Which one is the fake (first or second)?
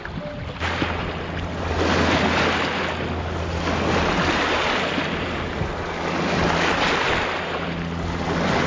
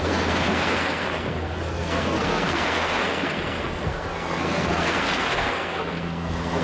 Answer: second